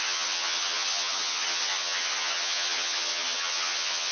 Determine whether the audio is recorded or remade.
remade